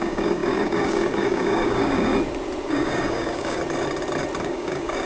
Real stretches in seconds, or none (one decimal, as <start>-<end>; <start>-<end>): 2.1-2.7; 3.6-4.4